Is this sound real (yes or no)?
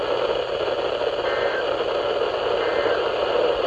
yes